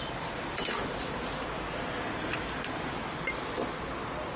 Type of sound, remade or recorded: recorded